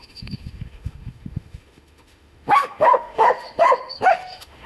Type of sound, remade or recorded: remade